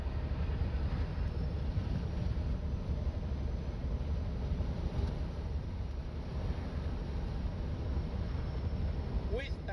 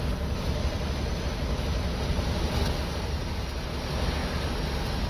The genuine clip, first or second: second